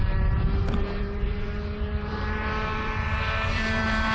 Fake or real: fake